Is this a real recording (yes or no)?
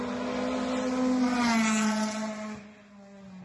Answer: yes